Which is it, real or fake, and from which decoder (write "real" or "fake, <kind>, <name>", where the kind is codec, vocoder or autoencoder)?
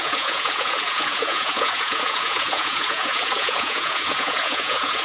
fake, vocoder, Vocos